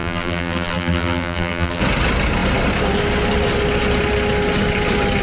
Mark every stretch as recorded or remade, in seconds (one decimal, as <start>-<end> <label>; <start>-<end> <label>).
0.0-1.8 remade; 1.8-5.2 recorded